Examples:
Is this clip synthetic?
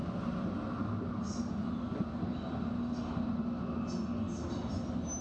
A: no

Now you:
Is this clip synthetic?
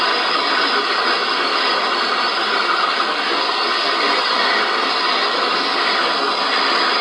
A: no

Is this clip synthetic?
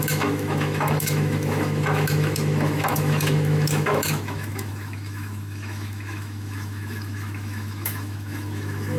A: yes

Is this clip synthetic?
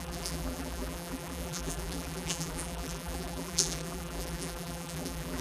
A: yes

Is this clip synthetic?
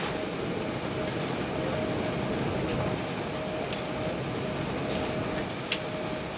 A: no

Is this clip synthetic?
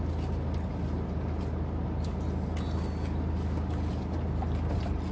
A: no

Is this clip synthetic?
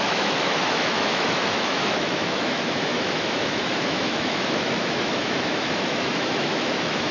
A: yes